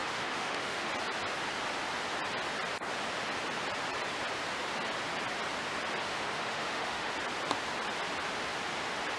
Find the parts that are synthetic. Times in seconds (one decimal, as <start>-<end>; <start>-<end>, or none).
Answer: 0.0-0.9; 6.0-7.1

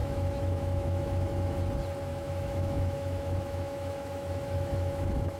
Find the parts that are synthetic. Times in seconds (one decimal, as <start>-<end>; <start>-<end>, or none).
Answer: 0.0-1.6; 2.1-5.4

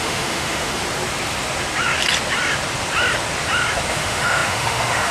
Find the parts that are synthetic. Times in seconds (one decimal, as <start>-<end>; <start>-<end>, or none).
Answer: 0.0-0.8; 3.9-5.1

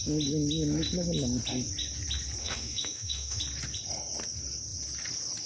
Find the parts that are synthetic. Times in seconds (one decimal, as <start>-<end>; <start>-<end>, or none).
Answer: 2.4-3.4

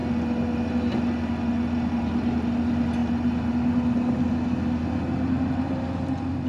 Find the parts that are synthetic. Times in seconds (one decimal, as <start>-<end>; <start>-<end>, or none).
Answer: none

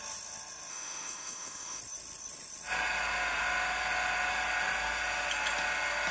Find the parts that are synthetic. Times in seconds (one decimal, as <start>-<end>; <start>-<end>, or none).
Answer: 0.7-1.8

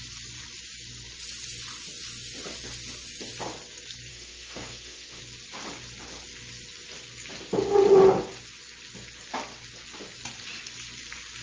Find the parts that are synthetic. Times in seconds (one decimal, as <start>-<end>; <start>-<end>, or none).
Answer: 4.1-5.2